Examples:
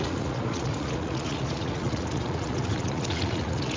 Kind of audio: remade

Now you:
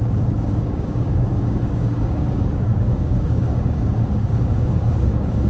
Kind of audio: remade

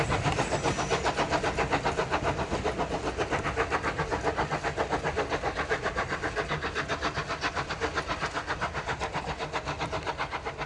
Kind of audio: recorded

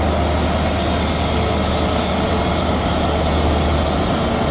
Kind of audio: recorded